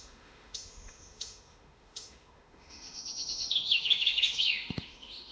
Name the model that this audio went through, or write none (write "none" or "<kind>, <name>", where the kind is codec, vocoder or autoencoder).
autoencoder, DAC-VAE